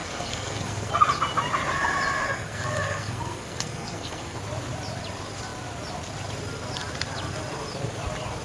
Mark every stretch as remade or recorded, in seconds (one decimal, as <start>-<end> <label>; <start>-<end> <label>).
0.0-0.9 remade; 0.9-2.2 recorded; 2.2-4.4 remade; 4.4-8.4 recorded